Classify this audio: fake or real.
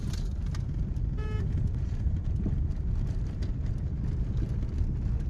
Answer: real